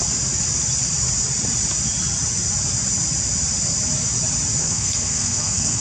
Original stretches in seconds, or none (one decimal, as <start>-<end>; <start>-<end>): 0.0-4.6